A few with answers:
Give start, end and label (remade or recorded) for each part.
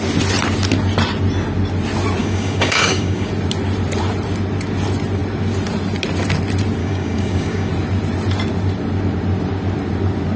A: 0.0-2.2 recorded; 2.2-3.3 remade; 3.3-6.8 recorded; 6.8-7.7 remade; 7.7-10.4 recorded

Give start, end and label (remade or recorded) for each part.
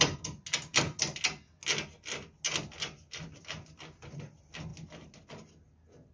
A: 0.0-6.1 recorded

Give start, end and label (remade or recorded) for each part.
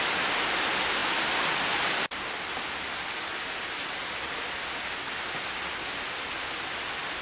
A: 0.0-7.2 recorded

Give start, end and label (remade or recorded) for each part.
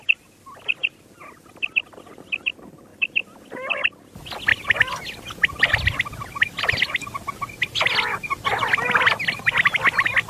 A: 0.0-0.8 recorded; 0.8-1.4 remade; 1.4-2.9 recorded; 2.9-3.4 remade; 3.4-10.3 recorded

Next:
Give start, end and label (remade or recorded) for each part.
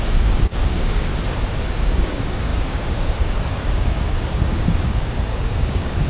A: 0.0-1.1 remade; 1.1-1.8 recorded; 1.8-6.1 remade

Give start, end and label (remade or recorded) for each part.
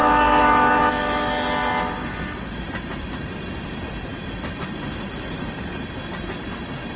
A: 0.0-7.0 recorded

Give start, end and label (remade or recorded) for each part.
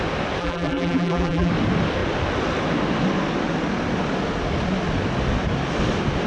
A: 0.0-0.4 recorded; 0.4-1.5 remade; 1.5-6.3 recorded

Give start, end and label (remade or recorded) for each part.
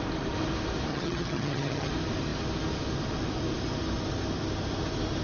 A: 0.0-0.9 recorded; 0.9-1.9 remade; 1.9-5.2 recorded